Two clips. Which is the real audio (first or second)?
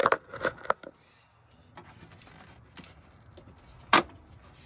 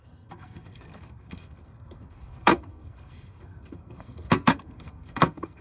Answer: first